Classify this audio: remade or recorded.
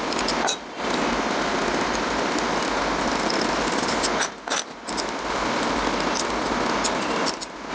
recorded